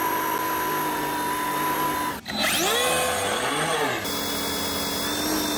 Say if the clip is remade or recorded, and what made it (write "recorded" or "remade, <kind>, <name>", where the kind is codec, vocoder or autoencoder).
recorded